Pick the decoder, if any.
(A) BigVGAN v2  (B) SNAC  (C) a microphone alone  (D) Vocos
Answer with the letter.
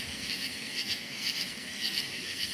B